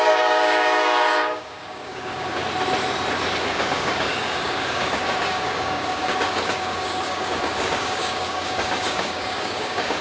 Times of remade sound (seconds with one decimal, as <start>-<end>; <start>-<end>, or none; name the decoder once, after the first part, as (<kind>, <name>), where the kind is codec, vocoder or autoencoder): 0.0-2.4 (codec, DAC); 3.4-10.0